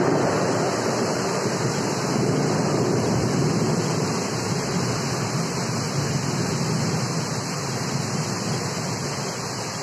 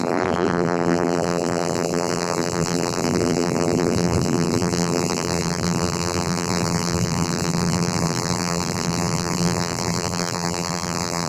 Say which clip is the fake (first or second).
second